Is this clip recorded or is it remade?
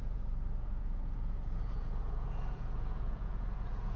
remade